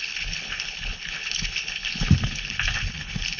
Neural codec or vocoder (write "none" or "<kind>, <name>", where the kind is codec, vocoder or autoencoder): codec, HILCodec